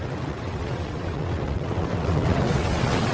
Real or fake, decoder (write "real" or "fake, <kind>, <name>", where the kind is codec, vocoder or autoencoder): fake, vocoder, WaveNeXt